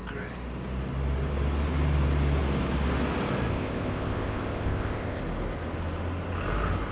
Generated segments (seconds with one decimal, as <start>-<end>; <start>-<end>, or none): 3.5-5.2